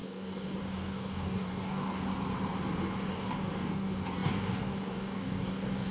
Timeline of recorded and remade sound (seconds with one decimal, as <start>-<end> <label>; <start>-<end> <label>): 0.0-2.1 remade; 2.1-3.1 recorded; 3.1-5.9 remade